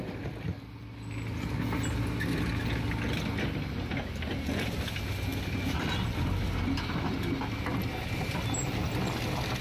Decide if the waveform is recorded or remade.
recorded